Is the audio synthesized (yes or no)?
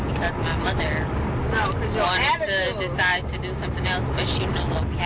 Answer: no